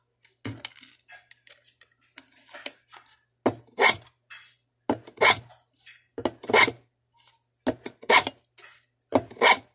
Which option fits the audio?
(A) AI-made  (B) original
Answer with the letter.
B